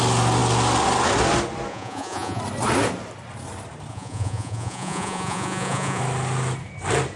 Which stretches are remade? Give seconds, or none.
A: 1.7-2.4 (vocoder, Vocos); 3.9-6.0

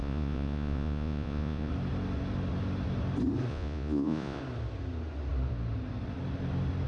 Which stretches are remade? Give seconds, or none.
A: 0.0-1.7 (vocoder, Vocos); 3.5-4.4

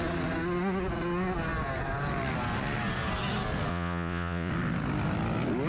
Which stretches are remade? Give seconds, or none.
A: 3.7-4.5 (vocoder, Vocos)

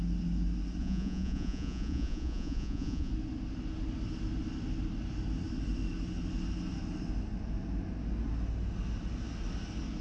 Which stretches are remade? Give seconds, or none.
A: 0.8-3.1 (vocoder, Vocos)

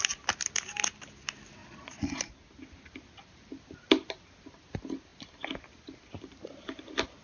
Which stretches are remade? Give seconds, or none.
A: 1.6-2.3 (vocoder, Vocos)

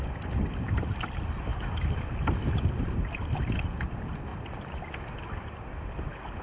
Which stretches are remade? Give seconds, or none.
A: none

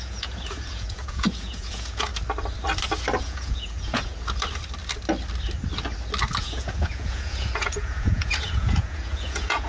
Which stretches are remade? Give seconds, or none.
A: 0.0-2.1 (vocoder, Vocos); 3.2-4.1; 6.4-9.7